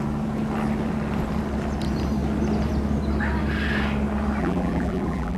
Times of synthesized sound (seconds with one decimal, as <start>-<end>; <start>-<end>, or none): 4.4-5.4